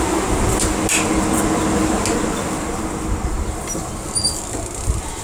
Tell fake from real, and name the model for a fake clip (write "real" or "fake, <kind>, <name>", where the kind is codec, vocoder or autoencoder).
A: real